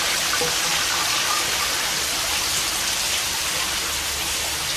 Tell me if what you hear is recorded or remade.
recorded